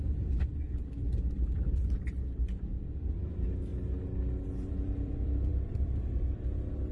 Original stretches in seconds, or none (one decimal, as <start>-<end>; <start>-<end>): 0.5-1.3; 2.7-3.2; 3.7-4.5